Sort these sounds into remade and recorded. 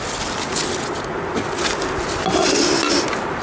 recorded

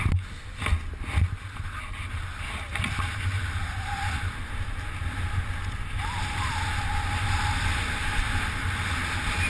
recorded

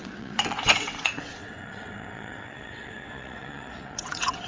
remade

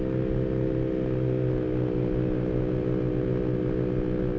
recorded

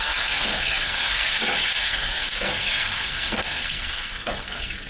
remade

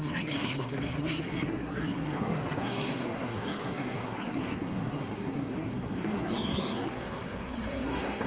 remade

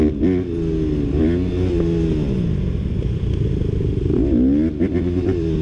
recorded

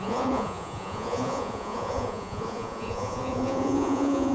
remade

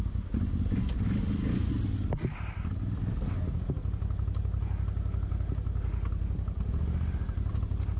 recorded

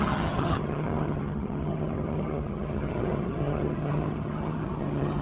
remade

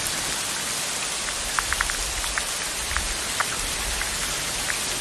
recorded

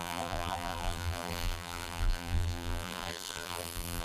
remade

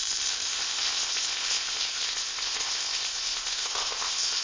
remade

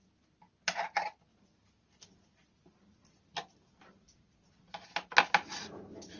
recorded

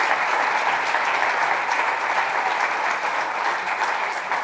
remade